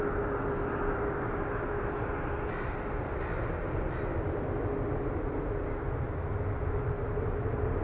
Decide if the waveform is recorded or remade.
recorded